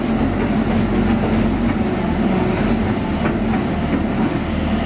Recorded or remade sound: recorded